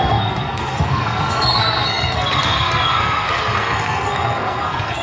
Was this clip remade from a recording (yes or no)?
yes